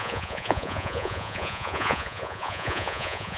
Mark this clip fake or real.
fake